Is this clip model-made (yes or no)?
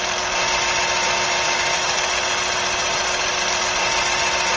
no